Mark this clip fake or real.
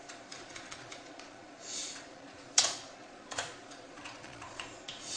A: fake